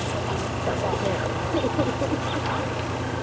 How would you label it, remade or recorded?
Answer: recorded